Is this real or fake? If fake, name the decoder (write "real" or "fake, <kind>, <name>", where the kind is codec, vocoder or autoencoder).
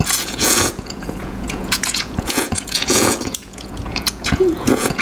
fake, vocoder, Vocos